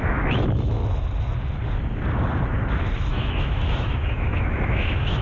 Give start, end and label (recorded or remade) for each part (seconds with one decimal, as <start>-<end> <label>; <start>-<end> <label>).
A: 0.0-0.8 remade; 0.8-3.1 recorded; 3.1-5.2 remade